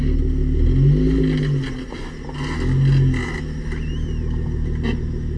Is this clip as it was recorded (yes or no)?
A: yes